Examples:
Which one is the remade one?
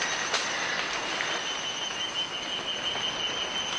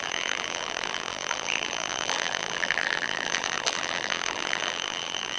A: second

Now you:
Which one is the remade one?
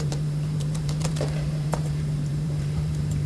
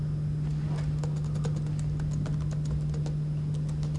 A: first